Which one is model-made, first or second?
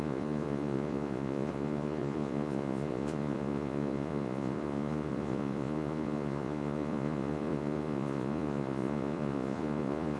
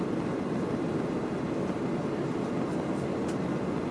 first